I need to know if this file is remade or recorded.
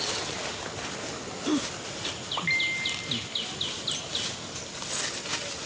recorded